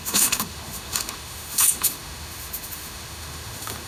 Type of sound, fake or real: fake